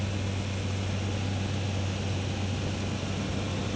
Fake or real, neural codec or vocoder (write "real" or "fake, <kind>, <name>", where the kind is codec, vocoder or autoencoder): real